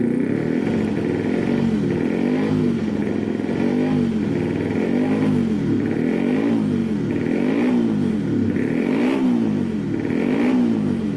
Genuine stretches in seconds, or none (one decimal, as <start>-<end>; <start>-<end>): 0.0-2.6; 3.1-11.2